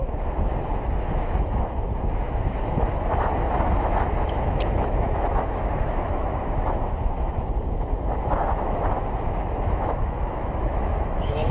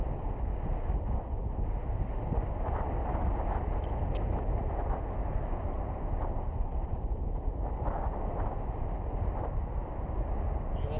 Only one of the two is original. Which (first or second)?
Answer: second